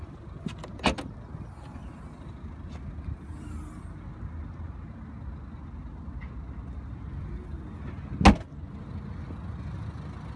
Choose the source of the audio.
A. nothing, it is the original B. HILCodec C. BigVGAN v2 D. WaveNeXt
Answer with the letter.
A